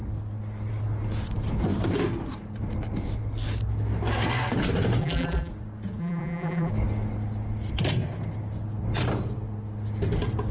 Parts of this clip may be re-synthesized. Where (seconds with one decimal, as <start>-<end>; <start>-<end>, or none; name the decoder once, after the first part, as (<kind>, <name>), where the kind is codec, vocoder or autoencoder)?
5.0-5.5 (vocoder, BigVGAN v2); 6.0-6.7